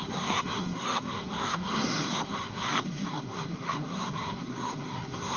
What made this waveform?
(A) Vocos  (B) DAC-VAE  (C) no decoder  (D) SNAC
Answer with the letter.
D